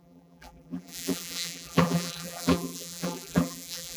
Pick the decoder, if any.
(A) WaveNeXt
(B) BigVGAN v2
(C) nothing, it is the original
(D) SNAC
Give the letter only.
B